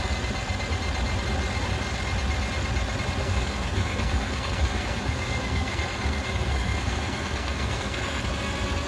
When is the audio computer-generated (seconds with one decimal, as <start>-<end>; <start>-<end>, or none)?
3.2-8.2